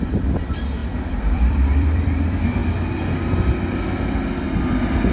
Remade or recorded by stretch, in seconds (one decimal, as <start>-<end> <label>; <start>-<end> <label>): 0.0-2.6 remade; 2.6-4.6 recorded; 4.6-5.1 remade